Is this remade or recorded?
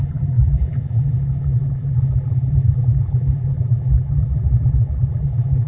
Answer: remade